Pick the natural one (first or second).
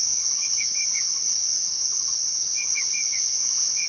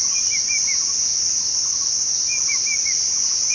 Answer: second